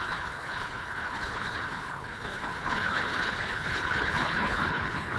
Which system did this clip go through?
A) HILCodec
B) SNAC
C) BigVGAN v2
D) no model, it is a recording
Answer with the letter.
A